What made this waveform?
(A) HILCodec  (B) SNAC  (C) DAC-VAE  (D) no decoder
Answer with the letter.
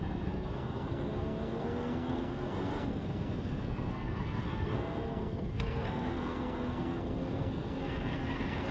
B